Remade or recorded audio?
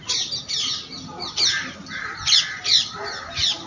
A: recorded